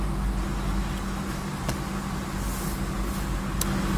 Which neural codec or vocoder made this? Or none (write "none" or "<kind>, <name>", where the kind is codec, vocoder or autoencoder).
none